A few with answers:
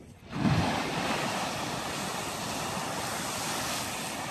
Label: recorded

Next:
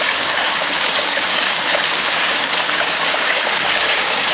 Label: remade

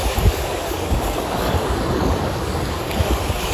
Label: remade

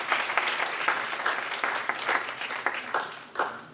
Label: recorded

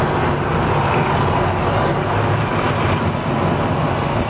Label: recorded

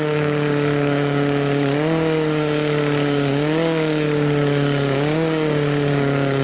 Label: remade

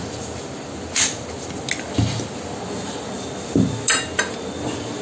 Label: recorded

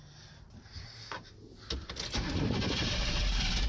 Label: recorded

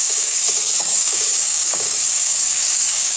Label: remade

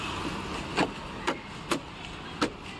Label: recorded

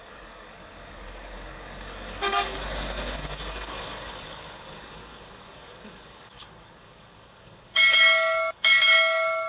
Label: remade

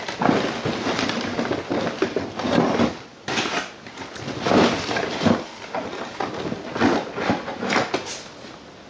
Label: recorded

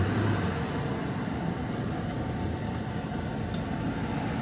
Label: recorded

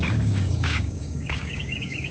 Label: remade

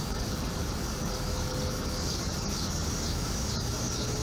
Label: remade